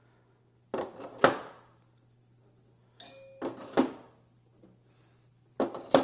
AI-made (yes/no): no